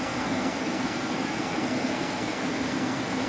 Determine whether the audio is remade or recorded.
remade